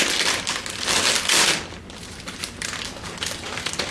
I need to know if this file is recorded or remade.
recorded